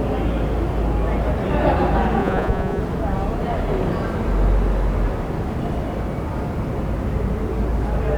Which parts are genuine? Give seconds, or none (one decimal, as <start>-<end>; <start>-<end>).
0.0-2.2; 2.8-8.2